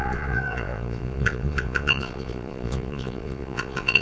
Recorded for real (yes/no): no